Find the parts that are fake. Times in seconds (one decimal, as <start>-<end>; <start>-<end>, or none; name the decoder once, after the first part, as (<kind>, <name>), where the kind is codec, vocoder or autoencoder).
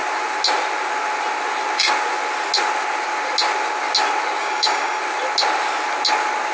4.4-5.0 (codec, DAC)